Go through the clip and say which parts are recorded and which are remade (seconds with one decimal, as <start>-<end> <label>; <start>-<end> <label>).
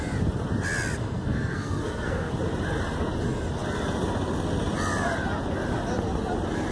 0.0-1.0 recorded; 1.0-2.3 remade; 2.3-6.7 recorded